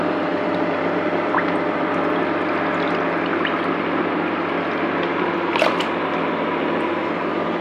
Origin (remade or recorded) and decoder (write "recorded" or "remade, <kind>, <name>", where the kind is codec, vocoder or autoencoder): remade, vocoder, BigVGAN v2